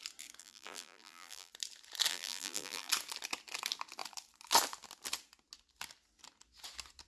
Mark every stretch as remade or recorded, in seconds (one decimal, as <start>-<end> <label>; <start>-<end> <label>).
0.0-0.4 recorded; 0.4-1.5 remade; 1.5-2.1 recorded; 2.1-2.9 remade; 2.9-7.1 recorded